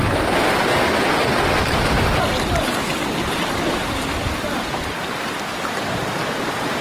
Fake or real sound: real